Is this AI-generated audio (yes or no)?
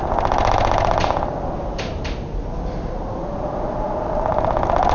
no